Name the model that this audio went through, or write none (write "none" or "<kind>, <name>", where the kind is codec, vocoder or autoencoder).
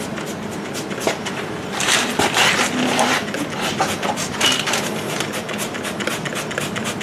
none